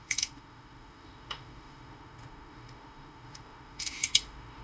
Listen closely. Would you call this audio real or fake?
fake